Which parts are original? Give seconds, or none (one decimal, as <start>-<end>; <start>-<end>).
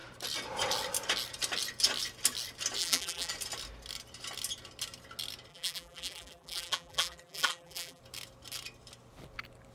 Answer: 0.0-2.8; 3.3-5.5; 8.0-9.7